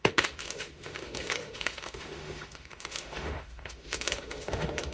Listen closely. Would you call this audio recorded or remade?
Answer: remade